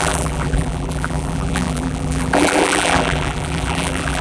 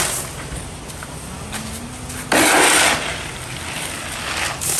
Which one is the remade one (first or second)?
first